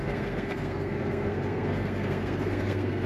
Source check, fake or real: fake